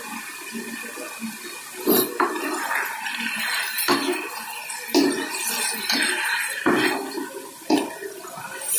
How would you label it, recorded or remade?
recorded